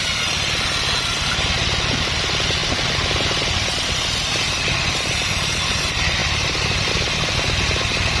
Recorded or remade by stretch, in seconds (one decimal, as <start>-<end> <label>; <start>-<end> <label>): 0.0-6.2 recorded; 6.2-6.9 remade; 6.9-8.2 recorded